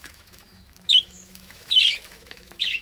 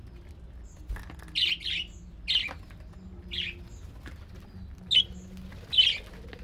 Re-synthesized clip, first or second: first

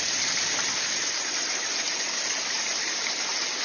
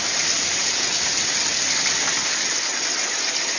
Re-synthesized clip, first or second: first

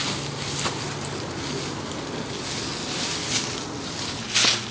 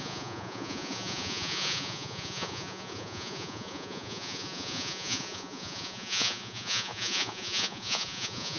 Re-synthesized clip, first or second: second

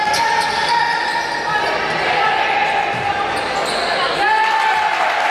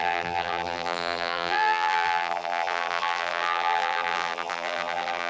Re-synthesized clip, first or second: second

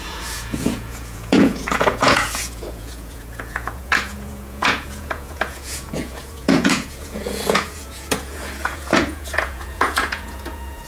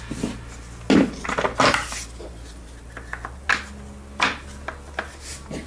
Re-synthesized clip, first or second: first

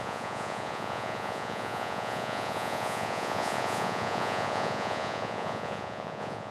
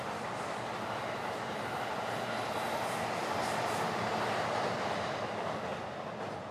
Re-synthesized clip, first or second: first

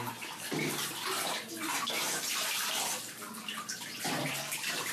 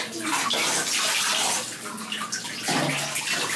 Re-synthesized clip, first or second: first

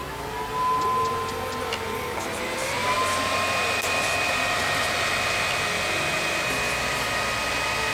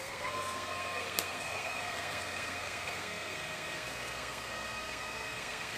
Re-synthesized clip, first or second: second